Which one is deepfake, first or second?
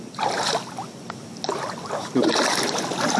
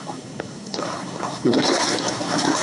second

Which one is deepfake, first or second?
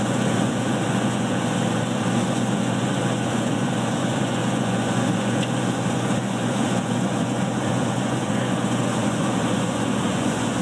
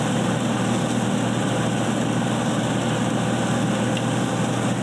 first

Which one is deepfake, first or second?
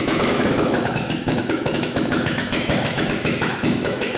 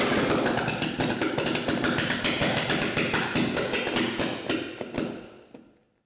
first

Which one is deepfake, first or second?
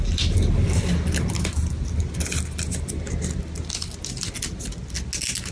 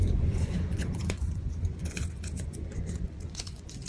second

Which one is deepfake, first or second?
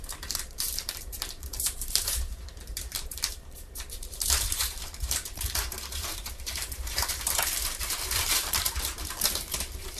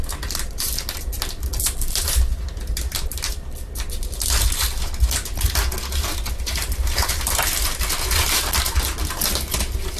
first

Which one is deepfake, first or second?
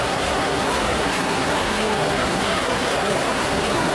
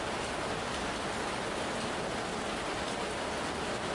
first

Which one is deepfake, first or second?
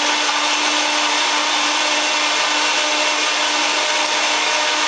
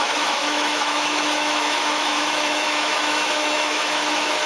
second